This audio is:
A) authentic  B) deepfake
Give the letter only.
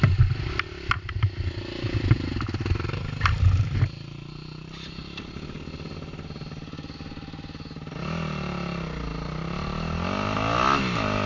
A